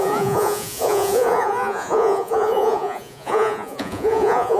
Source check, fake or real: fake